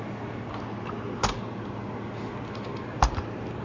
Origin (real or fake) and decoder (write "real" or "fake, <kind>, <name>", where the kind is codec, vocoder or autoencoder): real